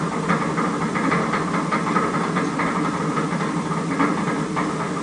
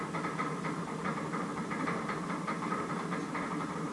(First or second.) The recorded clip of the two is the first